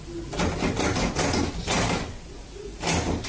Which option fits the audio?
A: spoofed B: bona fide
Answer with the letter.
B